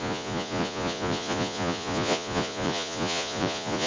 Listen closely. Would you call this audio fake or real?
fake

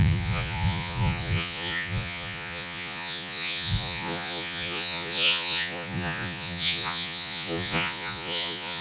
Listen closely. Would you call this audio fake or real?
fake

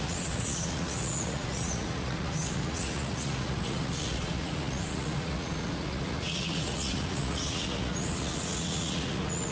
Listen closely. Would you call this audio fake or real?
fake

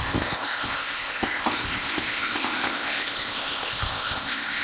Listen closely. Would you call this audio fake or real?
fake